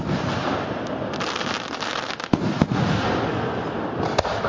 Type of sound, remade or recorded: recorded